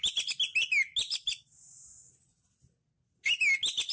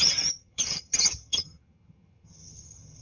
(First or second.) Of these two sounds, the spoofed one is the second